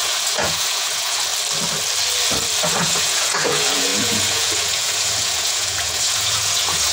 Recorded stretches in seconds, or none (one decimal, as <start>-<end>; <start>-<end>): 1.3-2.6